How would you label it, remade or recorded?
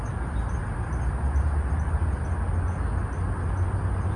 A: recorded